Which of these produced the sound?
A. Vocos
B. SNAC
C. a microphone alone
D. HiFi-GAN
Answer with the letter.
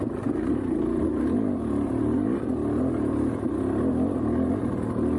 C